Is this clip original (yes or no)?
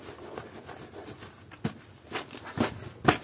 yes